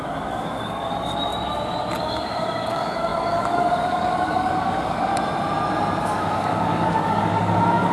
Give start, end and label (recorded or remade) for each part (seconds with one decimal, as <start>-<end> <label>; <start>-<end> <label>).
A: 0.0-1.3 remade; 1.3-2.0 recorded; 2.0-5.1 remade; 5.1-6.0 recorded; 6.0-7.9 remade